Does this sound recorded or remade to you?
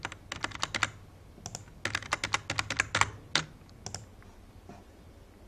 recorded